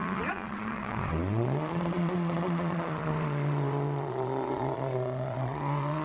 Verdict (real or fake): fake